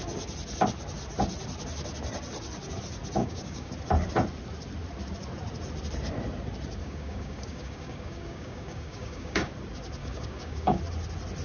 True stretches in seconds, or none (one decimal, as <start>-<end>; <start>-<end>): 0.0-3.2; 3.7-6.8; 9.5-10.0; 10.8-11.4